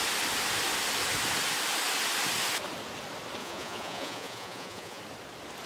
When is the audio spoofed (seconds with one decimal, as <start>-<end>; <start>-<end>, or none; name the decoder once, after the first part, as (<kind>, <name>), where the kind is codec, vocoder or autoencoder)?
3.4-5.0 (vocoder, Vocos)